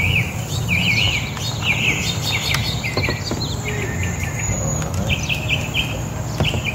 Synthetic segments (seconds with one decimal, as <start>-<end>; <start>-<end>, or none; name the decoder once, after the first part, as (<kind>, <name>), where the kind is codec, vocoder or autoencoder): none